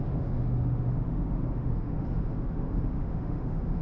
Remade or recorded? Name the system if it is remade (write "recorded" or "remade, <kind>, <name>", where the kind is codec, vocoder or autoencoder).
remade, autoencoder, DAC-VAE